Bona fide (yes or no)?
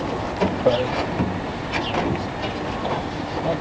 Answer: yes